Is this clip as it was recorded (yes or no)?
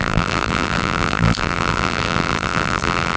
no